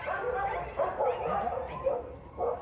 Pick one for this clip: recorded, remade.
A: recorded